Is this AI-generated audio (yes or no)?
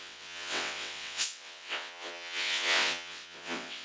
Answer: yes